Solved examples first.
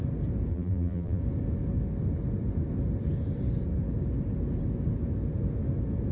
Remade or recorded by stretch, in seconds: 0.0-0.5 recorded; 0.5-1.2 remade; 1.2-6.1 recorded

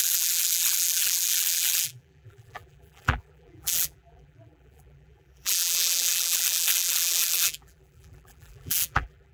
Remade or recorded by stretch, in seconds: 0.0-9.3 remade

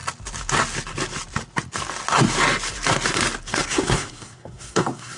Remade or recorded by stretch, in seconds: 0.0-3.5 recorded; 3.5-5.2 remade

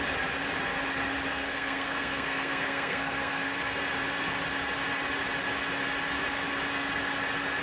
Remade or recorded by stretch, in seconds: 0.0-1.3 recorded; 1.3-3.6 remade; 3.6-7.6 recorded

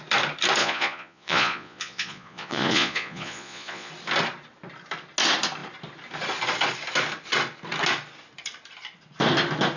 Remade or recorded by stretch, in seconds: 0.0-0.6 recorded; 0.6-3.9 remade; 3.9-9.8 recorded

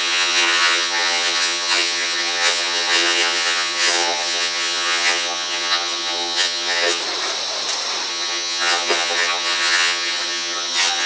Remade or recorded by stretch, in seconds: 0.0-7.0 remade; 7.0-8.1 recorded; 8.1-11.1 remade

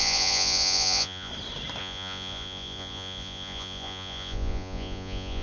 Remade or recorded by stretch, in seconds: 0.0-1.3 remade; 1.3-1.8 recorded; 1.8-5.4 remade